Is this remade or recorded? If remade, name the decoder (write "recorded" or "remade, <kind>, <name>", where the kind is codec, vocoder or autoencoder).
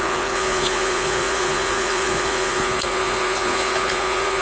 remade, vocoder, Vocos